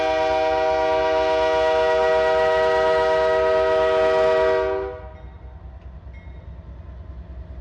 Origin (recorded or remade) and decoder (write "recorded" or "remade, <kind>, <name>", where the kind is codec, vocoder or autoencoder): recorded